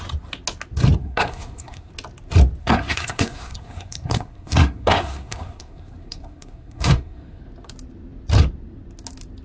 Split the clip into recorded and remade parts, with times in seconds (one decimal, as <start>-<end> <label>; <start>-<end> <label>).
0.0-1.0 recorded; 1.0-1.9 remade; 1.9-2.6 recorded; 2.6-7.4 remade; 7.4-9.4 recorded